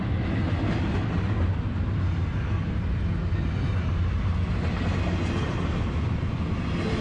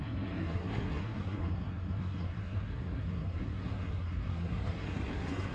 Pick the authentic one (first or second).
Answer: first